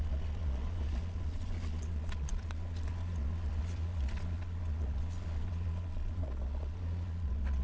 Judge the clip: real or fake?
fake